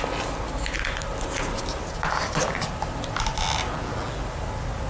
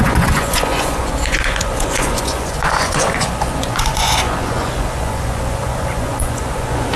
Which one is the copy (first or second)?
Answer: second